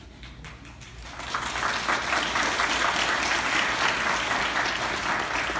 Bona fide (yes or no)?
yes